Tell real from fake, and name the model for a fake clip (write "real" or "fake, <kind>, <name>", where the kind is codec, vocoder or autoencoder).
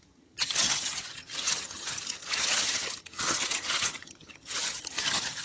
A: fake, vocoder, HiFi-GAN